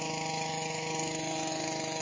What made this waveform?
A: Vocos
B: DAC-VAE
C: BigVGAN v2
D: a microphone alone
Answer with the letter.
B